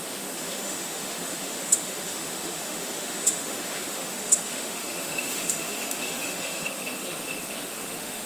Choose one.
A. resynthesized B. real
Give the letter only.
A